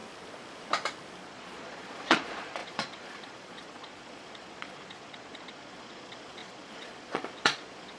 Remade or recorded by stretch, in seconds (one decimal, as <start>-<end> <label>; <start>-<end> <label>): 0.0-1.2 recorded; 1.2-8.0 remade